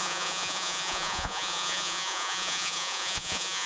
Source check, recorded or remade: remade